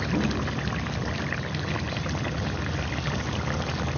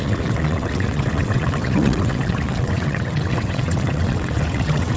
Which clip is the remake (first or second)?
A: second